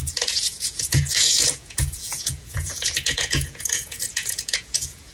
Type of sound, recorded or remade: remade